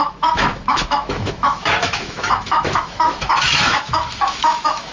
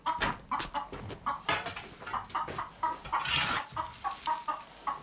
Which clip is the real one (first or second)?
second